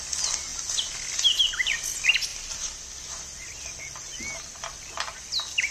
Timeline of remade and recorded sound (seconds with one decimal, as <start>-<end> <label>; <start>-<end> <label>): 0.0-2.3 recorded; 2.3-3.8 remade; 3.8-5.7 recorded